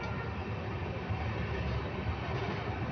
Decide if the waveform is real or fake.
real